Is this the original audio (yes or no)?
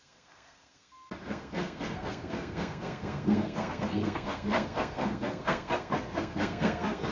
no